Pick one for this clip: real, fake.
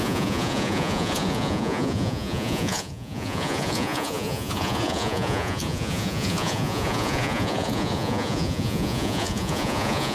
fake